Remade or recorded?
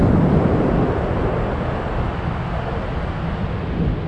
recorded